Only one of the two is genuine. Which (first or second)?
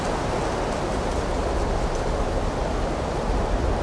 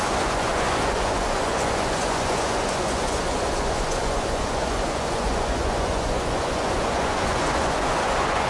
first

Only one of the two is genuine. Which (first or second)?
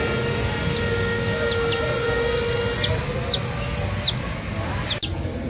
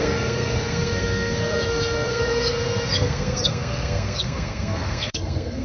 first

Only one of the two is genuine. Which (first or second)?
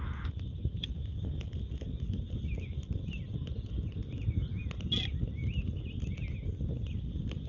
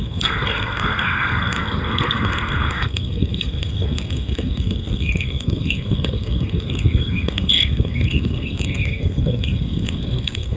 first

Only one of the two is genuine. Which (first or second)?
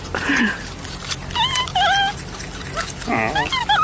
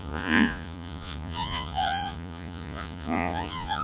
first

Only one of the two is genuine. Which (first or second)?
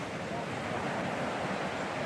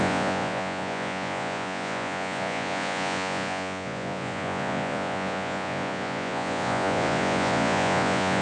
first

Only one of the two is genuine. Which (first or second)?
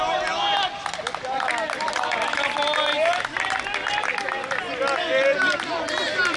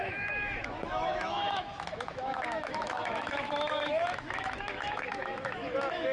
first